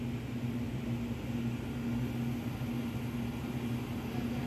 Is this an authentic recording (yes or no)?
yes